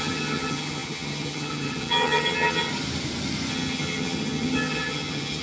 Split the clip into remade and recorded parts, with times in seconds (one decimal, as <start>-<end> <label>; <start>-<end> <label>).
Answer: 0.0-2.7 remade; 2.7-3.5 recorded; 3.5-5.4 remade